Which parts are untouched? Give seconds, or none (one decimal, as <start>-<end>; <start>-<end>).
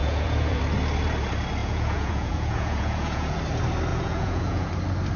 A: 0.6-1.6; 3.4-3.9; 4.7-5.2